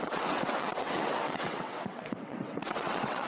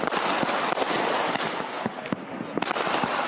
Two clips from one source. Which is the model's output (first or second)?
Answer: first